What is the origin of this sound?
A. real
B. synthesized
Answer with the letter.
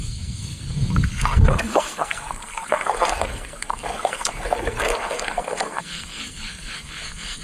B